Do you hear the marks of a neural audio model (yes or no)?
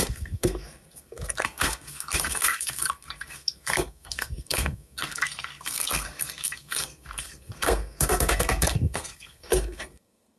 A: yes